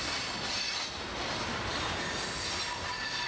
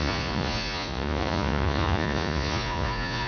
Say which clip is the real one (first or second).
first